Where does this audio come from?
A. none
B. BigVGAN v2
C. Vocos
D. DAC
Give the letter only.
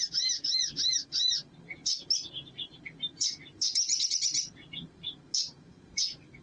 B